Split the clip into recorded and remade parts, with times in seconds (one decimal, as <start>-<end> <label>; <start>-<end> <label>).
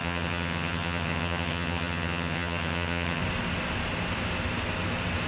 0.0-3.2 remade; 3.2-5.3 recorded